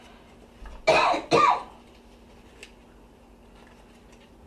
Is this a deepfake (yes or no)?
no